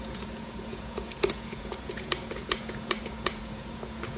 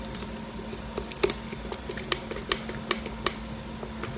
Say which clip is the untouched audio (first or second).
second